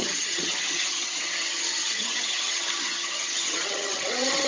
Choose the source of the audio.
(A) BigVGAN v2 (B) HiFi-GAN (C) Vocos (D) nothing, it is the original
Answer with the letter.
B